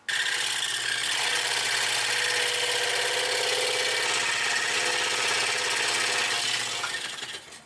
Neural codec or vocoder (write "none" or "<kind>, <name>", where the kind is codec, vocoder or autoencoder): none